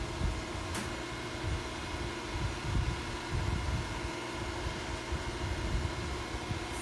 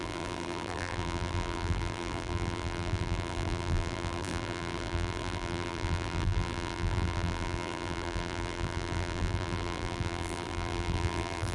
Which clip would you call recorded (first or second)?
first